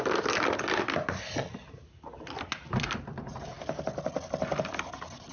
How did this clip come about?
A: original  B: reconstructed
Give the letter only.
A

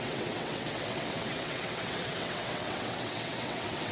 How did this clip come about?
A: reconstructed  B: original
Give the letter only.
A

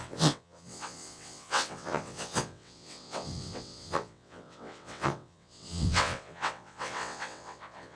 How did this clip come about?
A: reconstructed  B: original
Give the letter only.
A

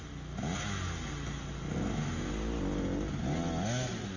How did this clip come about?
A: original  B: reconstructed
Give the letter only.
A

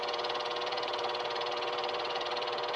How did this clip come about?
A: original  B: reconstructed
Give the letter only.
B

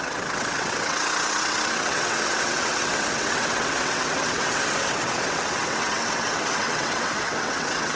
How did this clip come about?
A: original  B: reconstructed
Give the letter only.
B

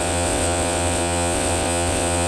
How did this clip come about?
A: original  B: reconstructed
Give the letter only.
B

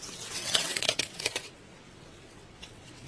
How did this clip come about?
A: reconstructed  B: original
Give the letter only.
A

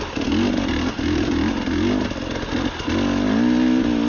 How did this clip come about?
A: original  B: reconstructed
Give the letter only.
A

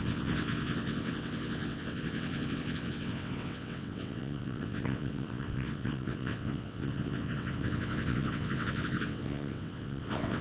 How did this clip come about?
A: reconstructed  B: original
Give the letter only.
A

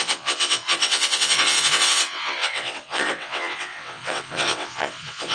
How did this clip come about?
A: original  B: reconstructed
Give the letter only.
B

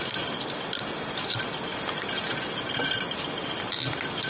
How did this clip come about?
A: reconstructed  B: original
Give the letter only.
B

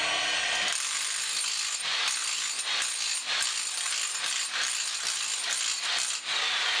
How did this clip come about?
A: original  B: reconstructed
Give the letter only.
A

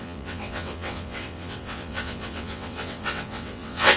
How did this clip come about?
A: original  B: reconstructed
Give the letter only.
B